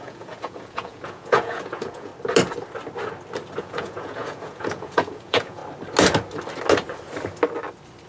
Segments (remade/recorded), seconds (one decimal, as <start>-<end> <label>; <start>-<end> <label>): 0.0-2.1 remade; 2.1-3.6 recorded; 3.6-5.6 remade; 5.6-8.1 recorded